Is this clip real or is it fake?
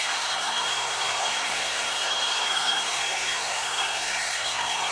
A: fake